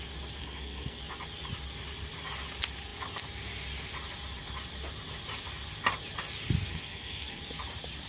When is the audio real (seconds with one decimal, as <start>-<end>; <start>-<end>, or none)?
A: 0.0-0.4; 1.0-6.7; 7.4-8.1